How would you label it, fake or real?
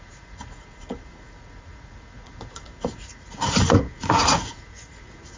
fake